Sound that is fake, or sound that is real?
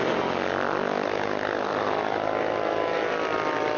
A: real